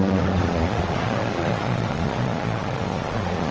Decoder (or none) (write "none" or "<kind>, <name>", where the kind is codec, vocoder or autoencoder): vocoder, Vocos